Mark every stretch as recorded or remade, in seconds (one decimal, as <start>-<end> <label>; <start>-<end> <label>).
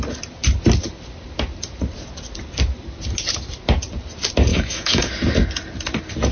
0.0-4.5 recorded; 4.5-5.1 remade; 5.1-6.3 recorded